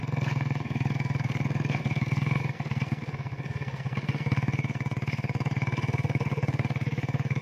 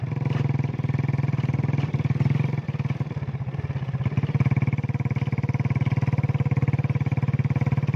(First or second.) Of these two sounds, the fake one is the first